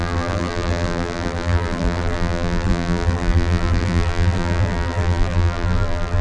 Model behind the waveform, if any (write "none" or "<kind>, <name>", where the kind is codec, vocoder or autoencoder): vocoder, BigVGAN v2